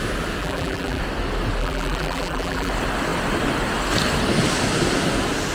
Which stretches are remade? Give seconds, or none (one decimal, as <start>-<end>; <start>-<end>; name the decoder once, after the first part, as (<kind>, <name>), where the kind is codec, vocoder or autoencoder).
0.4-1.0 (vocoder, BigVGAN v2); 1.6-2.7

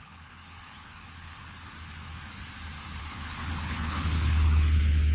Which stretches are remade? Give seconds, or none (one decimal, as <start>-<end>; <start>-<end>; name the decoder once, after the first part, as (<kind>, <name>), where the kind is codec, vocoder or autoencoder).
0.0-2.4 (codec, HILCodec); 3.0-5.1

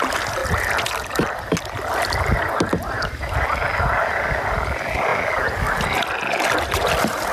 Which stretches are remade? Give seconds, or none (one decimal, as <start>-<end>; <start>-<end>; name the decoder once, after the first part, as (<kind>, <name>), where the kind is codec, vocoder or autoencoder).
none

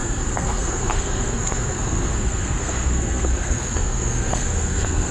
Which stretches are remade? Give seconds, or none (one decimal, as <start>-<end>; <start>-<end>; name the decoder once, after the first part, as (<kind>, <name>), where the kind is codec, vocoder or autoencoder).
0.0-5.1 (codec, SNAC)

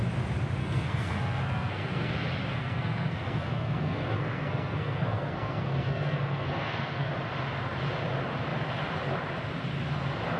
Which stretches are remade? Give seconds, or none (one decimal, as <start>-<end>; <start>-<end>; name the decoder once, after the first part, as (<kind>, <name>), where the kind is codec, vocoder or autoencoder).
0.6-2.1 (codec, SNAC); 2.5-7.1

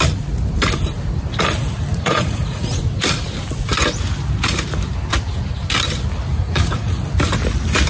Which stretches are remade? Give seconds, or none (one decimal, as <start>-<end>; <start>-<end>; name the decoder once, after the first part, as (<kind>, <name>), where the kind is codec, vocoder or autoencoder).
1.9-2.8 (vocoder, Vocos); 6.3-7.0

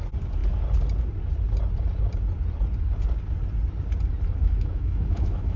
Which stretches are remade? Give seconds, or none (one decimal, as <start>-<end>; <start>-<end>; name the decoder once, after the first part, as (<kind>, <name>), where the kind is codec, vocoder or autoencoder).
4.4-5.6 (autoencoder, DAC-VAE)

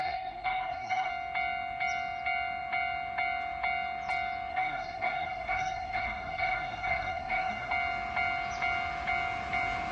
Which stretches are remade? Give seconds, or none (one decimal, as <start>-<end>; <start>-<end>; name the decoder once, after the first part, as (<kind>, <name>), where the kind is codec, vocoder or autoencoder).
0.0-1.1 (codec, SNAC); 4.5-7.7